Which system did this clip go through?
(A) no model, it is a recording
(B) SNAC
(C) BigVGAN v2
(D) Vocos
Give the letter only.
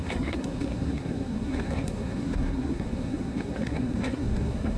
B